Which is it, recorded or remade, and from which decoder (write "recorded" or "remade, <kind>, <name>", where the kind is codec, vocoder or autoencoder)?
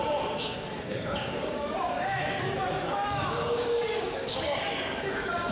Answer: remade, codec, DAC